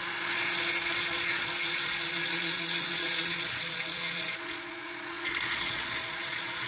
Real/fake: fake